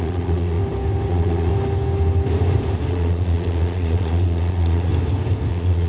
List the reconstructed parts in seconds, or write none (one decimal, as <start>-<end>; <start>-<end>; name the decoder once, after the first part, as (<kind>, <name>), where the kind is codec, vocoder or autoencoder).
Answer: 0.0-0.6 (vocoder, Vocos); 1.1-1.5; 2.9-4.9; 5.5-5.9